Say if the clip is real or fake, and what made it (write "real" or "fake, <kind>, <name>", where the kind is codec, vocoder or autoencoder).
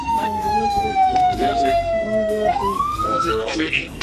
fake, codec, SNAC